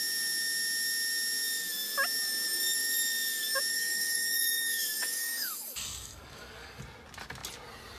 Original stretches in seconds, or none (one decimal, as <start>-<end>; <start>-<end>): 0.0-3.7; 6.8-8.0